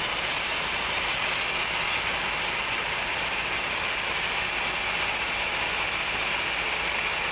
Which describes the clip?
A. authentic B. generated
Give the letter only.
A